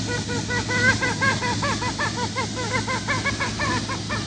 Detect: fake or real real